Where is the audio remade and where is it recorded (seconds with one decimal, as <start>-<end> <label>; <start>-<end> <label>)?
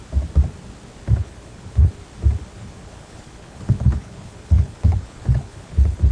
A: 0.0-1.2 recorded; 1.2-1.9 remade; 1.9-2.5 recorded; 2.5-6.1 remade